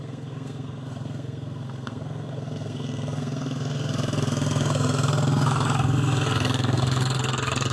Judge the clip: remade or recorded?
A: remade